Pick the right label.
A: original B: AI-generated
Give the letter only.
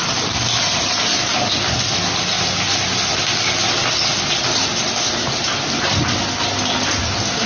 A